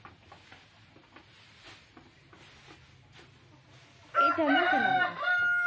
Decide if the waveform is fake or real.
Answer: real